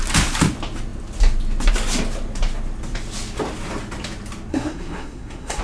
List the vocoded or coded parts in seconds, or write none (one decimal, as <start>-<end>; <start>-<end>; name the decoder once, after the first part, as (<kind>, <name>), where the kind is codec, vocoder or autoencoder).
4.5-5.6 (codec, SNAC)